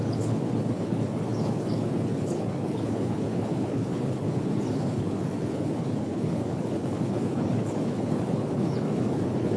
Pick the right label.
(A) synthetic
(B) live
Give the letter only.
A